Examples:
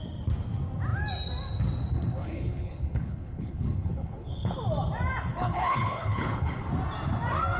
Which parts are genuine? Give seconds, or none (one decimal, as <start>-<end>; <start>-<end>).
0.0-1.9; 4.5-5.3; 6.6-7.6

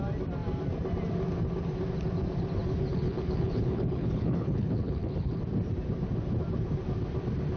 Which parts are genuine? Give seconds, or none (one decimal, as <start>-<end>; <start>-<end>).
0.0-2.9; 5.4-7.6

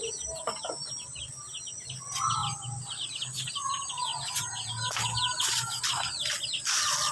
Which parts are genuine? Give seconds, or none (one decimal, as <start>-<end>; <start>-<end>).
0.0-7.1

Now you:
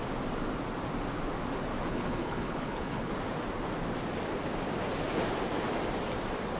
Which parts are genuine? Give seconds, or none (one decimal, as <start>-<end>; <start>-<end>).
0.0-1.9; 3.1-6.6